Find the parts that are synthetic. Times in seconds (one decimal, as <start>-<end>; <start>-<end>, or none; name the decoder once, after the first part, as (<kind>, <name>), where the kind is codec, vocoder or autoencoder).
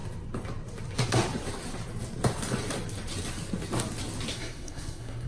4.3-5.3 (codec, SNAC)